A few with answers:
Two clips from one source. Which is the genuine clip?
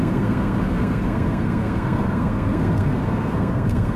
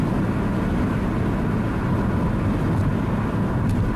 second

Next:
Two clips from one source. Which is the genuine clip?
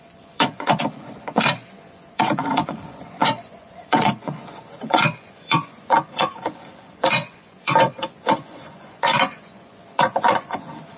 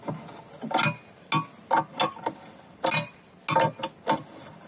second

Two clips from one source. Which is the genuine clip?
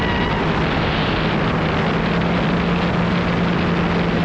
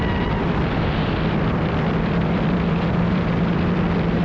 first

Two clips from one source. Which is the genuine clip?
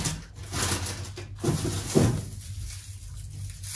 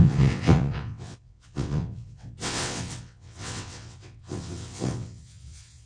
first